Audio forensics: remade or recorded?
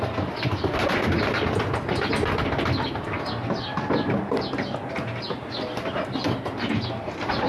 recorded